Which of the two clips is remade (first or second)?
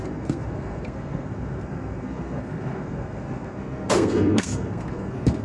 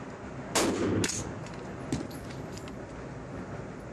first